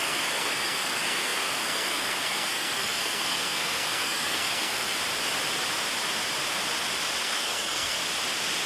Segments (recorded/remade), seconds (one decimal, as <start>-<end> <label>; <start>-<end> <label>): 0.0-5.0 remade; 5.0-7.2 recorded; 7.2-8.0 remade; 8.0-8.7 recorded